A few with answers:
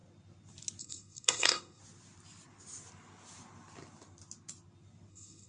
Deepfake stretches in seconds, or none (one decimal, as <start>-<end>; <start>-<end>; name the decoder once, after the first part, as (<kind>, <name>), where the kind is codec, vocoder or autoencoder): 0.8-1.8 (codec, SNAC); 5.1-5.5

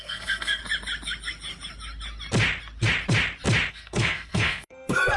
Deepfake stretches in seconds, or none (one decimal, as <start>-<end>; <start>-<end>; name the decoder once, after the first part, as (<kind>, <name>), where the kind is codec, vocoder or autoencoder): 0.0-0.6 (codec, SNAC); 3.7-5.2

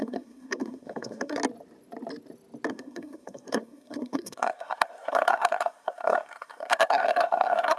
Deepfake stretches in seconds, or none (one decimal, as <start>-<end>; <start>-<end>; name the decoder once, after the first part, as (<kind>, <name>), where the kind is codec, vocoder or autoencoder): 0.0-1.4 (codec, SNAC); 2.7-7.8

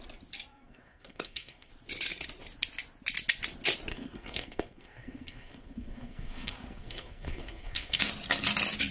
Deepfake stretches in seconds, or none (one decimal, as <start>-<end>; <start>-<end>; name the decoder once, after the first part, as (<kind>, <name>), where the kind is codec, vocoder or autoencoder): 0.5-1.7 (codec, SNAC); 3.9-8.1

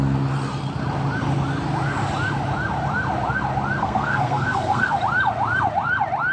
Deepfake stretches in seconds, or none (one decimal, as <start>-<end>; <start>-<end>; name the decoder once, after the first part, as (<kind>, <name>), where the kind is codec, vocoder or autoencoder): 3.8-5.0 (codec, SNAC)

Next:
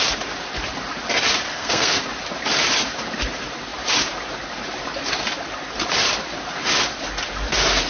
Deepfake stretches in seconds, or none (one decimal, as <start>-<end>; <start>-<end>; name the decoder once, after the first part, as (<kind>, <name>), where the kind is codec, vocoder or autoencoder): 1.5-2.0 (codec, SNAC)